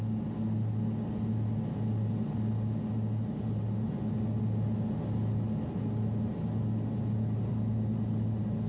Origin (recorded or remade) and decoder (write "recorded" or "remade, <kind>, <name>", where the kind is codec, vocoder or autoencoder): recorded